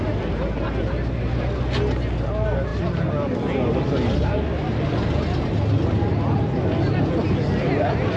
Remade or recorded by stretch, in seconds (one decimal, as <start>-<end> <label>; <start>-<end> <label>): 0.0-8.2 recorded